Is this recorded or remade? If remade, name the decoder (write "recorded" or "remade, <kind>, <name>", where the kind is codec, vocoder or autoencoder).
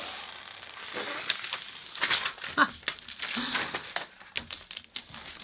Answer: recorded